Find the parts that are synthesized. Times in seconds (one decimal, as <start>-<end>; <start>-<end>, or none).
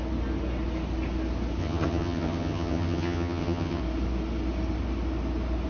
1.6-3.8